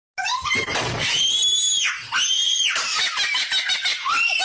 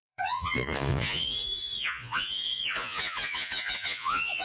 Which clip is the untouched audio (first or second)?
first